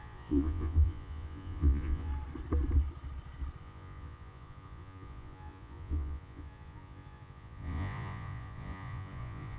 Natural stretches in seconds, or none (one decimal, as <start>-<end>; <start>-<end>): 2.1-3.6